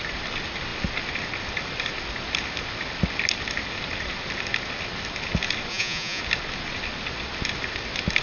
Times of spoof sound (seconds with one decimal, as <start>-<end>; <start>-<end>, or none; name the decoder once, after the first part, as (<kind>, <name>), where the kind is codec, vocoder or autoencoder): 5.7-6.2 (vocoder, Vocos)